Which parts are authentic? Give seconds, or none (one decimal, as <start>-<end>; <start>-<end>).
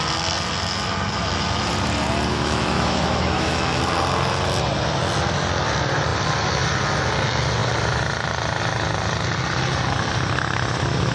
0.0-2.3; 3.8-11.1